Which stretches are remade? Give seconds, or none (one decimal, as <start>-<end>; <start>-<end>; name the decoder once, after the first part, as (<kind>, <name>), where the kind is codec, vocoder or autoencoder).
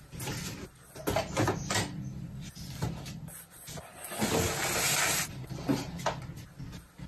none